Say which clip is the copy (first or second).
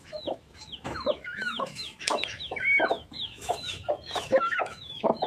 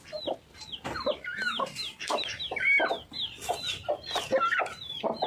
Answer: first